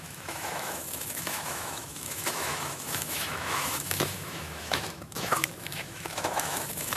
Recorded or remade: remade